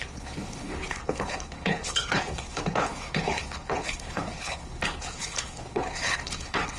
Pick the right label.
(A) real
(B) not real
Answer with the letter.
B